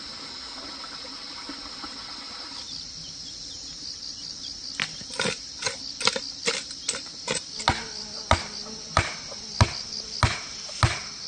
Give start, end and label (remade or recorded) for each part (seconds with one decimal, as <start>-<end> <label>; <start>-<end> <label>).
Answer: 0.0-11.3 recorded